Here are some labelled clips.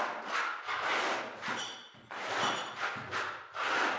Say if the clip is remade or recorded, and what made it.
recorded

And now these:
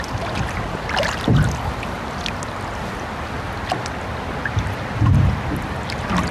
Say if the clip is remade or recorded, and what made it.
recorded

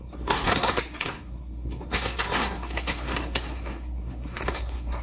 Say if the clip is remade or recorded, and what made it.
remade, codec, SNAC